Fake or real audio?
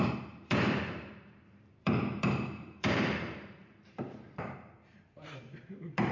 fake